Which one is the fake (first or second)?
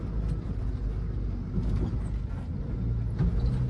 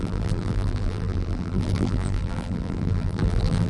second